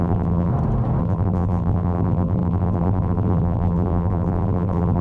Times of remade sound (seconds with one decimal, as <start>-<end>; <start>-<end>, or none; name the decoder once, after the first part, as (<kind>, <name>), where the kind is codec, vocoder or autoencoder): 0.0-0.5 (vocoder, BigVGAN v2); 1.0-5.0